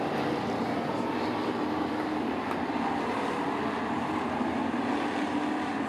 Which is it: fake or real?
real